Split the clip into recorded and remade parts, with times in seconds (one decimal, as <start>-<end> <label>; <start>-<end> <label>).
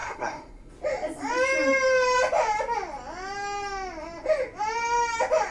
0.0-0.7 remade; 0.7-5.5 recorded